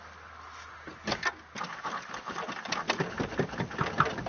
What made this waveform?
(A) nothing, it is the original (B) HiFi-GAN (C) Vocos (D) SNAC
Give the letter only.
A